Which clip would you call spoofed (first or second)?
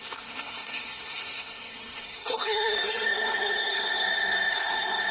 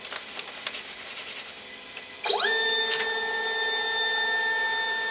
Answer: first